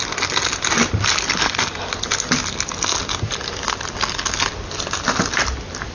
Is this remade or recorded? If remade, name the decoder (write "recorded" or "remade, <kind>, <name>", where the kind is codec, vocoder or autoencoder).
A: recorded